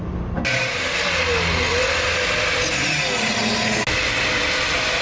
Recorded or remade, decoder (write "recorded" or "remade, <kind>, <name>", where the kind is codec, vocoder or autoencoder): recorded